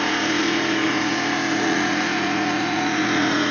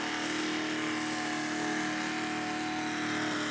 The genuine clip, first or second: second